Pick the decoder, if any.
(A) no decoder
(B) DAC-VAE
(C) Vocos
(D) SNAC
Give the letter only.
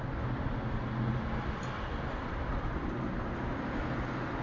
A